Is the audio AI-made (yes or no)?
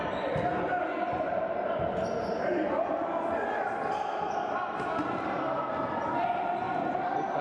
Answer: no